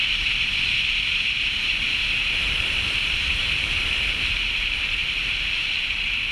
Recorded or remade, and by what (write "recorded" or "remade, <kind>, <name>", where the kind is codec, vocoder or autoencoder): remade, vocoder, BigVGAN v2